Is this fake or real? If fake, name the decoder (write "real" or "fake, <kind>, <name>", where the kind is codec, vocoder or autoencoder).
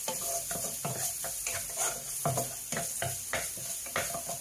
real